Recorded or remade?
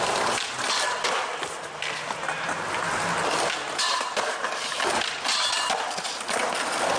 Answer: recorded